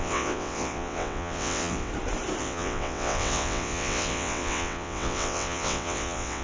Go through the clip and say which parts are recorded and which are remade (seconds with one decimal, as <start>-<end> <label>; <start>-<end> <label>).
0.0-1.9 remade; 1.9-2.4 recorded; 2.4-6.4 remade